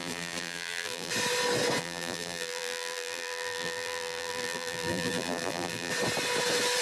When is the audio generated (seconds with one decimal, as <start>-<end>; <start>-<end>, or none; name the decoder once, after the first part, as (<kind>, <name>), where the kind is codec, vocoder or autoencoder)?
0.0-1.1 (vocoder, BigVGAN v2); 1.8-5.9